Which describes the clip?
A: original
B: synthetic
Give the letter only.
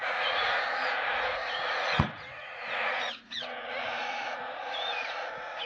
B